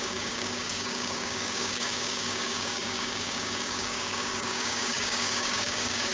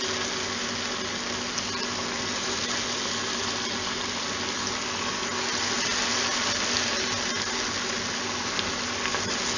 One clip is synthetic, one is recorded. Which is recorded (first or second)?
second